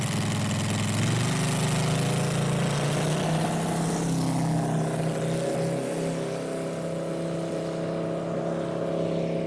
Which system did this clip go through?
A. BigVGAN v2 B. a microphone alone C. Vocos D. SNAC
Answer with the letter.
B